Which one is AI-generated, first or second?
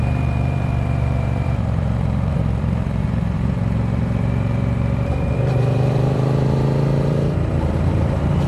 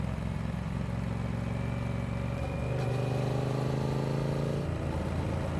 first